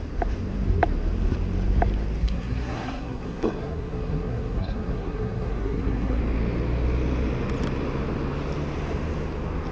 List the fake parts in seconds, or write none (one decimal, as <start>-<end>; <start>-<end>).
2.2-6.2